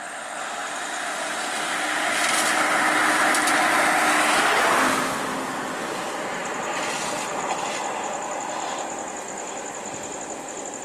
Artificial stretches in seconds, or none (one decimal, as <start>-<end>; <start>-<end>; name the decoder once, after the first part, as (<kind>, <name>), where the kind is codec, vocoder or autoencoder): none